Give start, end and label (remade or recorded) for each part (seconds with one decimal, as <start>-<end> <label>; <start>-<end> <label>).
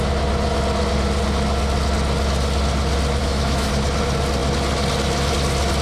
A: 0.0-3.2 recorded; 3.2-3.7 remade; 3.7-5.8 recorded